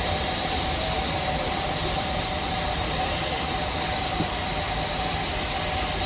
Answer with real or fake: real